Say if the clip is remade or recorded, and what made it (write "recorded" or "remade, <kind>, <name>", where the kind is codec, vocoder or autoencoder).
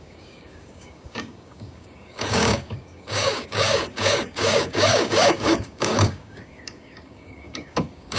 remade, codec, DAC